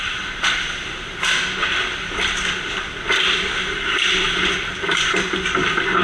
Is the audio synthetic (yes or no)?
no